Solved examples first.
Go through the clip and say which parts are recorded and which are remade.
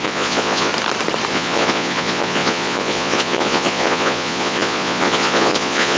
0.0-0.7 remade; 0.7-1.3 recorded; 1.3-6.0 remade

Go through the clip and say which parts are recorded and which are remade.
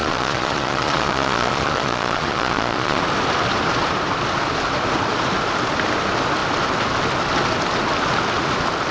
0.0-3.0 remade; 3.0-8.9 recorded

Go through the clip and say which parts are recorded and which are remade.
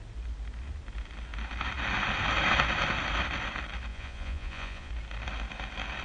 0.0-3.9 recorded; 3.9-4.9 remade; 4.9-6.0 recorded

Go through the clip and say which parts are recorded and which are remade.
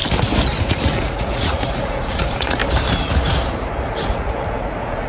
0.0-0.8 recorded; 0.8-2.6 remade; 2.6-4.1 recorded; 4.1-5.1 remade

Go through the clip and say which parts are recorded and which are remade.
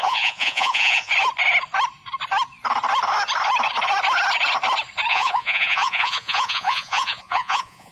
0.0-1.1 remade; 1.1-5.1 recorded; 5.1-7.9 remade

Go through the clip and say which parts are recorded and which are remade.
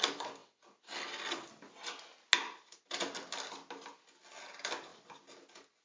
0.0-5.8 recorded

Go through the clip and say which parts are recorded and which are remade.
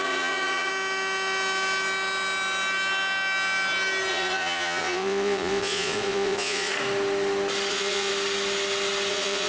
0.0-0.7 remade; 0.7-4.1 recorded; 4.1-6.7 remade; 6.7-7.7 recorded; 7.7-8.1 remade; 8.1-9.1 recorded; 9.1-9.5 remade